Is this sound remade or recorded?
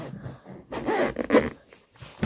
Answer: recorded